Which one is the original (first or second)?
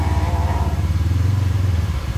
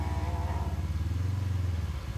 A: second